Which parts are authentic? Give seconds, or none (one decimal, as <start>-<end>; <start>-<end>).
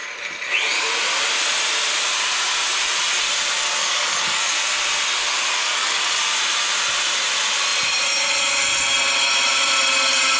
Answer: 0.0-3.8; 4.5-5.6; 6.2-10.4